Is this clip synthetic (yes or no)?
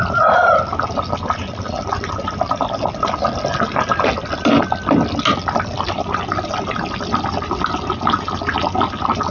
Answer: no